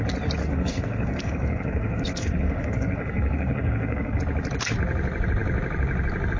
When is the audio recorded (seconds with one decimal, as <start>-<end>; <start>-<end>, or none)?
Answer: 0.0-0.4; 4.2-6.4